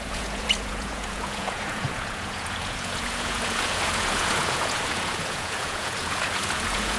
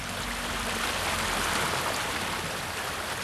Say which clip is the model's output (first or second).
first